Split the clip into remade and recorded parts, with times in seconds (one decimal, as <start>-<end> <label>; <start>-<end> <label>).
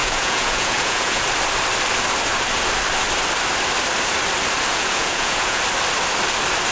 0.0-1.2 remade; 1.2-4.7 recorded; 4.7-5.6 remade; 5.6-6.7 recorded